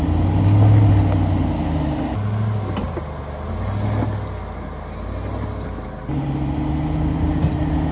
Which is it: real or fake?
real